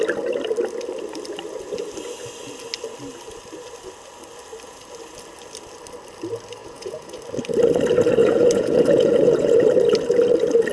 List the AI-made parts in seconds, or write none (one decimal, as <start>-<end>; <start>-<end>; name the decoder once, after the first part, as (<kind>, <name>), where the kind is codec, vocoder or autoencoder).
6.6-7.2 (vocoder, Vocos); 8.2-9.6